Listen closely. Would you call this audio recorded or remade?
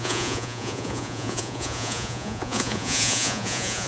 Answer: remade